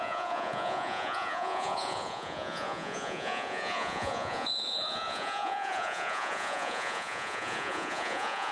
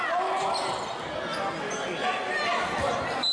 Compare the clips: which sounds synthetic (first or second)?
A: first